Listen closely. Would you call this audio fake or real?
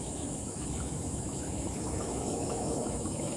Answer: fake